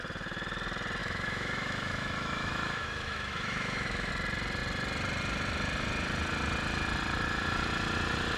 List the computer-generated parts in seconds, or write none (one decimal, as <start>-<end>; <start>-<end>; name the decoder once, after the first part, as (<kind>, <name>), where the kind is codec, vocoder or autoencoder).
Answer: 1.0-4.1 (autoencoder, DAC-VAE)